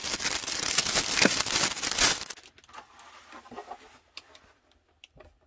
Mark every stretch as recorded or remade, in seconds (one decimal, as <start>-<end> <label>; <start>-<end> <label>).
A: 0.0-2.1 remade; 2.1-5.5 recorded